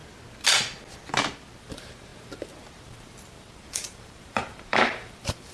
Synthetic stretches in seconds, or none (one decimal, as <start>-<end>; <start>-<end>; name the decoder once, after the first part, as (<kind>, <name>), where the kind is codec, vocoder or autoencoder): 1.6-5.5 (vocoder, BigVGAN v2)